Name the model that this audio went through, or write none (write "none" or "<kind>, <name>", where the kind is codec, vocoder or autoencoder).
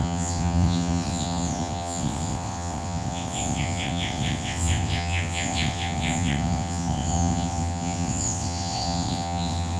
vocoder, WaveNeXt